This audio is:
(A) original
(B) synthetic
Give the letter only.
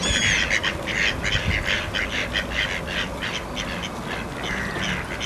A